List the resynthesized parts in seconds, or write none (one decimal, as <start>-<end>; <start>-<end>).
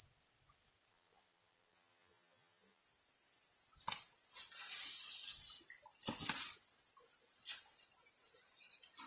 0.9-2.8